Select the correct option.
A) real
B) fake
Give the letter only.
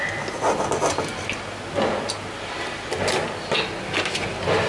A